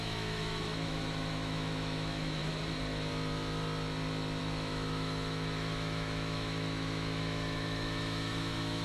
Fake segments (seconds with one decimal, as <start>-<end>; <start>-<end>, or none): 0.0-2.4; 4.4-8.8